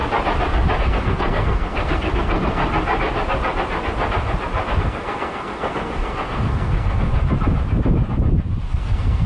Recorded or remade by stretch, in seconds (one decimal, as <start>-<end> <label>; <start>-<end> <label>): 0.0-0.8 recorded; 0.8-2.6 remade; 2.6-4.8 recorded; 4.8-7.1 remade; 7.1-8.7 recorded; 8.7-9.3 remade